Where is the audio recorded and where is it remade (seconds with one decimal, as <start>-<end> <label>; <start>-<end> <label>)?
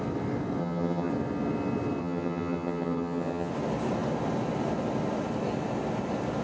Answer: 0.0-0.6 recorded; 0.6-1.1 remade; 1.1-2.0 recorded; 2.0-3.5 remade; 3.5-6.4 recorded